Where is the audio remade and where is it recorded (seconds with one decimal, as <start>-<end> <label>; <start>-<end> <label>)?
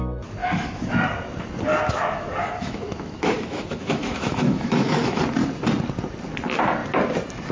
0.0-0.4 recorded; 0.4-0.9 remade; 0.9-1.7 recorded; 1.7-5.2 remade; 5.2-7.5 recorded